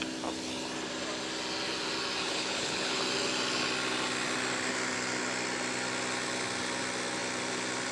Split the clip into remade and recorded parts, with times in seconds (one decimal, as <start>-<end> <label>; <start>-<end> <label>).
0.0-2.2 recorded; 2.2-3.0 remade; 3.0-7.9 recorded